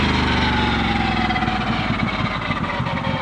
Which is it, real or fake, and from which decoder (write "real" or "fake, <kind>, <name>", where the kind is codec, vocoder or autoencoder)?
real